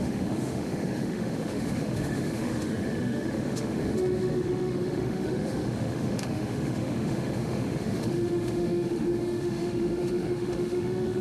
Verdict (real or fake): fake